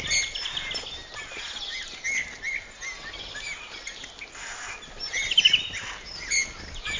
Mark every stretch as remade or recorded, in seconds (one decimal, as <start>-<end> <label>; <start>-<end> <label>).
0.0-7.0 recorded

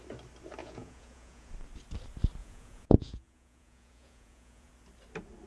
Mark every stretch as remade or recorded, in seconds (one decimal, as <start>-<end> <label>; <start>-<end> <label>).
0.0-0.6 recorded; 0.6-1.5 remade; 1.5-2.4 recorded; 2.4-4.7 remade; 4.7-5.5 recorded

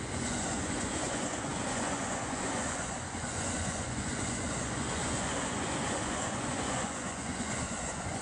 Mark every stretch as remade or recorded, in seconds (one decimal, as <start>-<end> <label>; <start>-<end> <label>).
0.0-8.2 remade

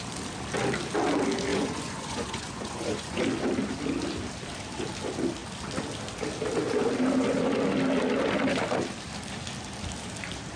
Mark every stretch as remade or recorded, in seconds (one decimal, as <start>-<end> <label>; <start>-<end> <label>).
0.0-1.5 recorded; 1.5-3.2 remade; 3.2-10.6 recorded